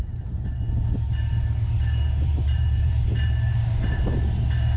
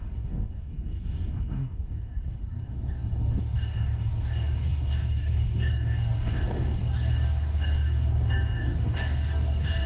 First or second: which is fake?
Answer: second